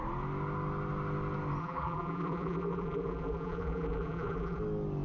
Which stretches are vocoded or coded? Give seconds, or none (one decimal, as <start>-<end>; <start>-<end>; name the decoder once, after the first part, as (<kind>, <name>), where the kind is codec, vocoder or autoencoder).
1.6-4.6 (vocoder, BigVGAN v2)